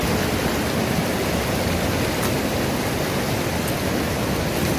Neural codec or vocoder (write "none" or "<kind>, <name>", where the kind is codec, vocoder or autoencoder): none